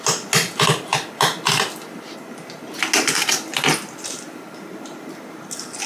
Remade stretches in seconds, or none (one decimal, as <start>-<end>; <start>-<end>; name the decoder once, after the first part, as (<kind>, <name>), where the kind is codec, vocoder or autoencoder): none